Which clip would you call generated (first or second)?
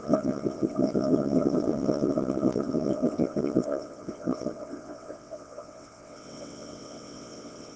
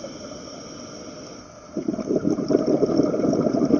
first